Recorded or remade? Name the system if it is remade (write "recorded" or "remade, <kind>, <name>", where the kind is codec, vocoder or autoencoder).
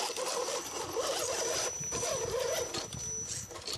recorded